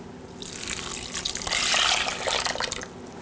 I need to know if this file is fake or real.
real